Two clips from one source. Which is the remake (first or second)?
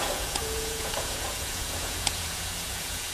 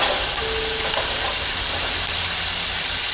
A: first